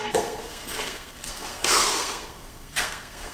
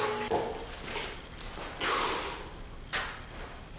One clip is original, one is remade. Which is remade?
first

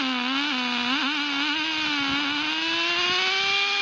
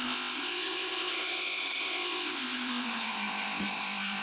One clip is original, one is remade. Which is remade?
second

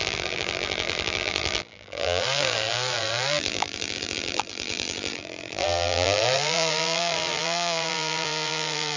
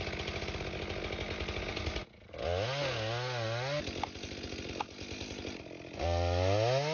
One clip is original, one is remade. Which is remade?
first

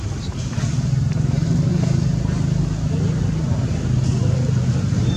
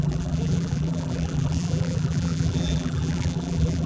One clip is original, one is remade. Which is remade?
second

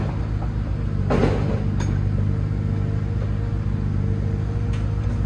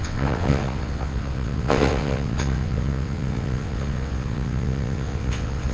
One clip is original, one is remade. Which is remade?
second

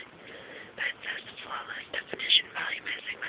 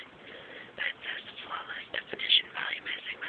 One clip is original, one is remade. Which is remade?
second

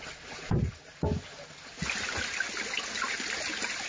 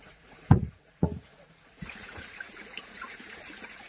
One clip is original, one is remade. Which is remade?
second